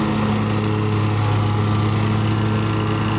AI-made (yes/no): no